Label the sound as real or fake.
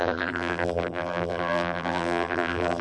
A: fake